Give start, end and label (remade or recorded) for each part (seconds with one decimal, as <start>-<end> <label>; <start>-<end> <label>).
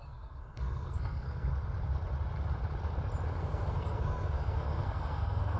0.0-1.5 remade; 1.5-3.4 recorded; 3.4-5.6 remade